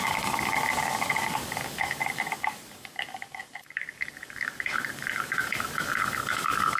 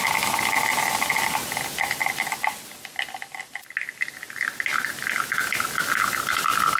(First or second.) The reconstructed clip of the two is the first